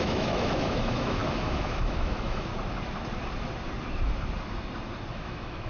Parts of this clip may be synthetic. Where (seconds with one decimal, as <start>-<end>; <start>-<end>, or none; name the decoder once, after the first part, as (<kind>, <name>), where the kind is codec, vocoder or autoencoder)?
0.0-2.5 (autoencoder, DAC-VAE); 5.1-5.7